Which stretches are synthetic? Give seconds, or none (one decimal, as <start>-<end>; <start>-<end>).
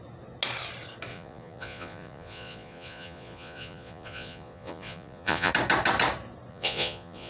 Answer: 1.1-5.5; 6.5-7.3